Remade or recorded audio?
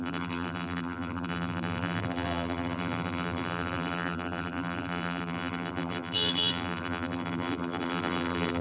remade